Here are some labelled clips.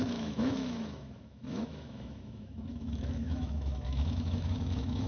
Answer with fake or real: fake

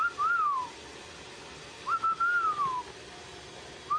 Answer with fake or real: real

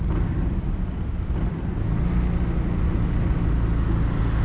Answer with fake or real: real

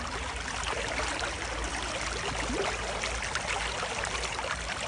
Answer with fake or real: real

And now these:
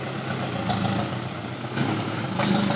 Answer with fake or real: real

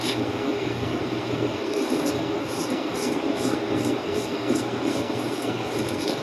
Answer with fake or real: fake